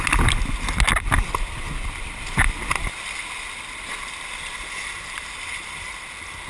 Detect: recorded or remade recorded